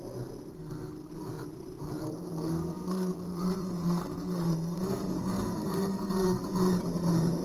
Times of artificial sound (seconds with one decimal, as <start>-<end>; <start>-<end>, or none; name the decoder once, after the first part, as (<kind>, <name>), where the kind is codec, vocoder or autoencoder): 0.5-1.1 (codec, SNAC); 2.0-6.4